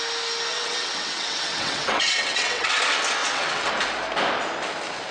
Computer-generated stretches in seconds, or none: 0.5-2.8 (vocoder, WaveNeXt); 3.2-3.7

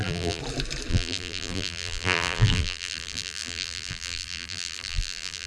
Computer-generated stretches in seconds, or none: 0.0-0.4 (vocoder, BigVGAN v2); 0.9-5.5

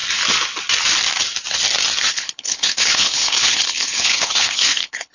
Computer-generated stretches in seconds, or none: 2.1-5.1 (codec, HILCodec)

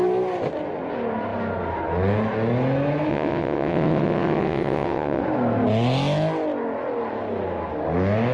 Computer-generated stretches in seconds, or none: 3.1-5.2 (vocoder, WaveNeXt)

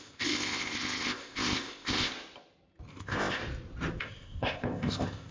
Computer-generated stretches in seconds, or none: 0.0-2.1 (codec, ZipCodec); 2.9-3.4; 4.0-5.3